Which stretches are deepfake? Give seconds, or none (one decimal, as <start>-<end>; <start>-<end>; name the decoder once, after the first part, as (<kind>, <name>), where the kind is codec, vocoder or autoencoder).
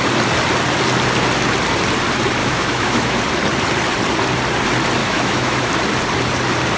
2.4-3.2 (autoencoder, DAC-VAE); 5.0-5.7